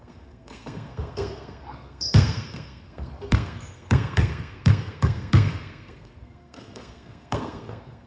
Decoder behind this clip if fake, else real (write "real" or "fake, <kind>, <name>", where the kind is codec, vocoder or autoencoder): fake, codec, SNAC